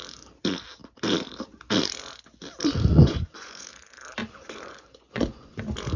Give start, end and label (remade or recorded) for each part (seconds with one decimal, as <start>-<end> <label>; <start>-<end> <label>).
0.0-2.9 recorded; 2.9-3.7 remade; 3.7-4.2 recorded; 4.2-5.6 remade; 5.6-6.0 recorded